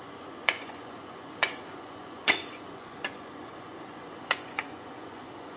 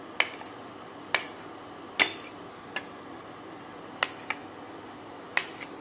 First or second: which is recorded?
second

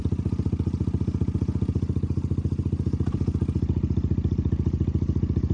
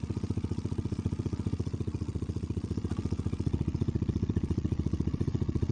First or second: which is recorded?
first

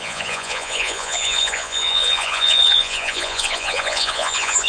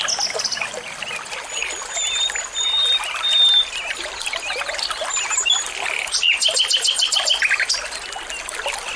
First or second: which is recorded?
second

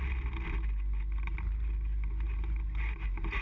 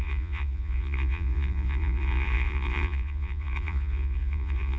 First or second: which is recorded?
first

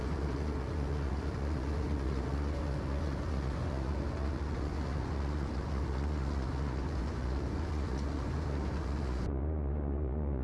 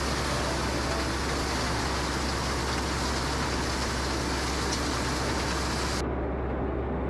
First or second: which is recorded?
second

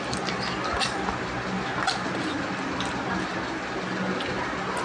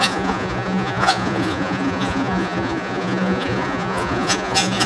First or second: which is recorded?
first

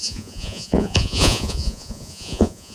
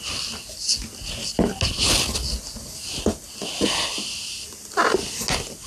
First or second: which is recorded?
second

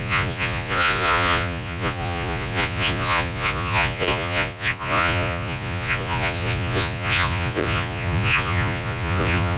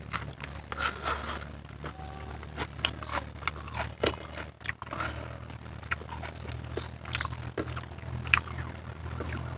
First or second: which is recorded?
second